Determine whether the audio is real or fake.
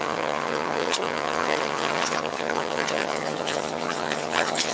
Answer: fake